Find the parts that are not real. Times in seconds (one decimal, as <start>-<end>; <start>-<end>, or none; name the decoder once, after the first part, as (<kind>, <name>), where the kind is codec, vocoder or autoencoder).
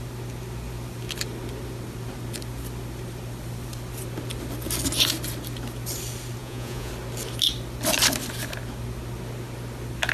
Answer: 6.4-6.9 (vocoder, Vocos)